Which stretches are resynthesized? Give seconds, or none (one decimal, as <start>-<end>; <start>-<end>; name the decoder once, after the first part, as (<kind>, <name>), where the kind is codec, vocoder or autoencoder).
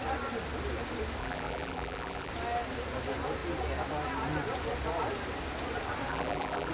1.2-2.3 (vocoder, BigVGAN v2); 6.1-6.7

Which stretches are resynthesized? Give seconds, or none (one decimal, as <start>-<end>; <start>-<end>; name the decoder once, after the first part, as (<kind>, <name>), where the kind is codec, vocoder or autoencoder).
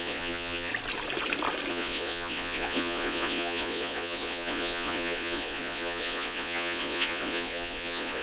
0.0-0.7 (vocoder, Vocos); 1.7-8.2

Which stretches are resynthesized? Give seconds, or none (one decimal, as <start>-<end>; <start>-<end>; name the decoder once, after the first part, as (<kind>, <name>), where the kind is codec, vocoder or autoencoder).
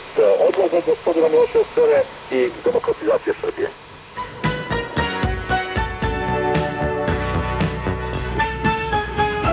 0.0-4.4 (autoencoder, DAC-VAE); 8.3-9.5